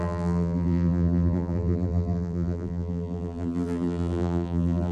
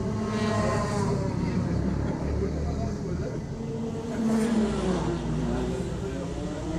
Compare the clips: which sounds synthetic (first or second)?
first